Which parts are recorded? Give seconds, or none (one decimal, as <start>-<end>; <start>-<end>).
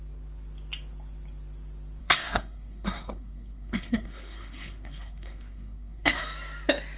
0.0-2.0; 6.2-7.0